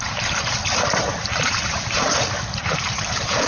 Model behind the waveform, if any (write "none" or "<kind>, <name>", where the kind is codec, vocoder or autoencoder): vocoder, BigVGAN v2